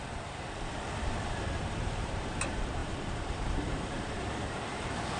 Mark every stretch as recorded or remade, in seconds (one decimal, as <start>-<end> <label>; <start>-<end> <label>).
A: 0.0-0.7 remade; 0.7-1.6 recorded; 1.6-5.2 remade